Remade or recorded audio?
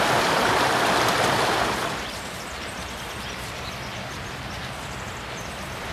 remade